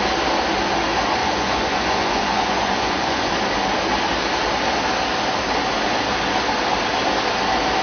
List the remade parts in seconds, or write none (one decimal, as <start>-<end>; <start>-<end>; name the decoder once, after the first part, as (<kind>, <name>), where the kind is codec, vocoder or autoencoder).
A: 1.2-3.3 (vocoder, Vocos)